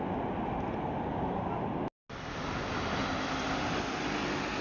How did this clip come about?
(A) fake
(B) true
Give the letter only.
B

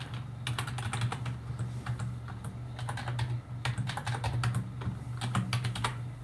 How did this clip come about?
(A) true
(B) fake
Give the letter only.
A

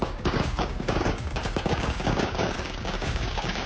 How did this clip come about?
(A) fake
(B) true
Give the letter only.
A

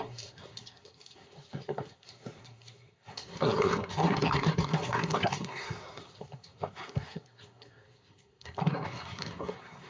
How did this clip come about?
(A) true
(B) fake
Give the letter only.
B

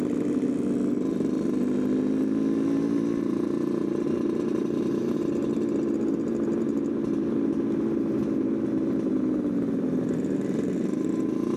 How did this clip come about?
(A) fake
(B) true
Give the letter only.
B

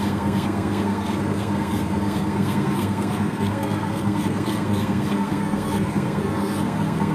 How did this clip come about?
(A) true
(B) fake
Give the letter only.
B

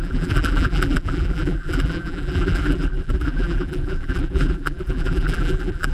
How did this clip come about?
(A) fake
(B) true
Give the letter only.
A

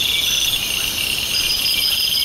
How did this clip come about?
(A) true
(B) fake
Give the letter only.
A